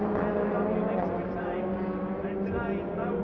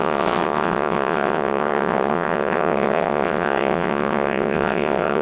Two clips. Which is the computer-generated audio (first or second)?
second